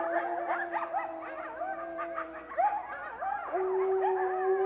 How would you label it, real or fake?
real